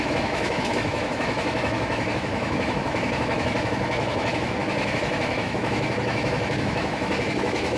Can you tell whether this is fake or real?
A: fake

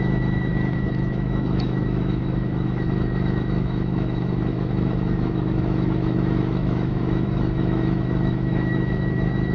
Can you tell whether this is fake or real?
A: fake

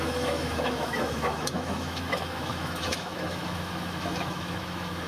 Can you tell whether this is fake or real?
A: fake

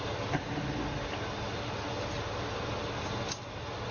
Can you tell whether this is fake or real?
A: real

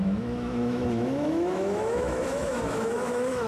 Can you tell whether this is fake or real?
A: fake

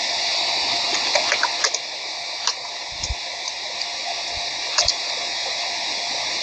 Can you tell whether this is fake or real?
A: real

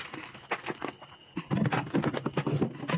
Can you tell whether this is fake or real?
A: real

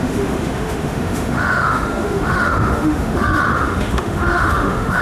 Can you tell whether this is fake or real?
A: fake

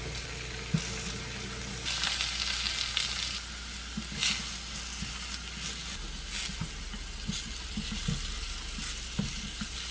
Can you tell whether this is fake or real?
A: real